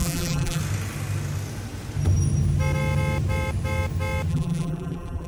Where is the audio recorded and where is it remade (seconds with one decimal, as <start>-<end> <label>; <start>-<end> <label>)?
0.0-0.6 remade; 0.6-4.3 recorded; 4.3-5.3 remade